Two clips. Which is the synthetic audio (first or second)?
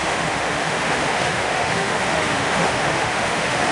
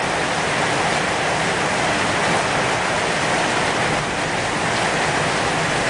first